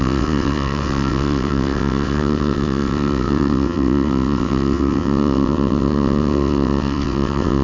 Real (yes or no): no